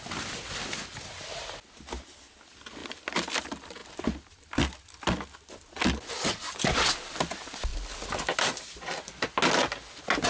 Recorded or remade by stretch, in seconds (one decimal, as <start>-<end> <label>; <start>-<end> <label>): 0.0-2.8 recorded; 2.8-3.4 remade; 3.4-7.7 recorded; 7.7-9.1 remade; 9.1-10.3 recorded